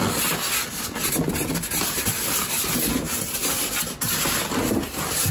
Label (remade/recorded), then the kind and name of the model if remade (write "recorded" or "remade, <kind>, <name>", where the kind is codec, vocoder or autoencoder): recorded